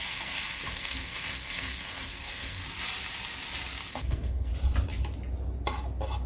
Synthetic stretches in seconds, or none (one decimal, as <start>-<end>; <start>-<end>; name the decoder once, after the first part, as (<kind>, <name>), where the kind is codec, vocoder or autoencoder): 0.0-2.6 (codec, SNAC); 3.9-4.5